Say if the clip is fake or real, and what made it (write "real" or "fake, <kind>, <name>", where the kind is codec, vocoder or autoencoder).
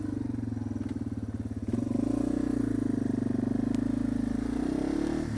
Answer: real